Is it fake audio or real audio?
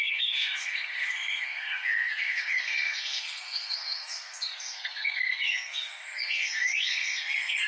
fake